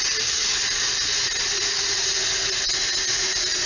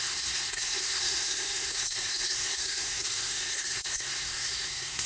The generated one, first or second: second